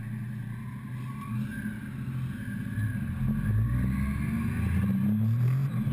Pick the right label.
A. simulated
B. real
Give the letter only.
B